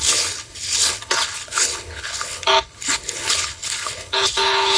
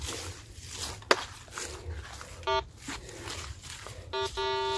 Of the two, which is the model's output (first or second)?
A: first